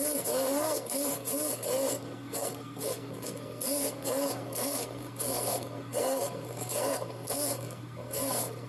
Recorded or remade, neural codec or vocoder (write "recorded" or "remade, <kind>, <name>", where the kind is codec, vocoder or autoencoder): remade, codec, SNAC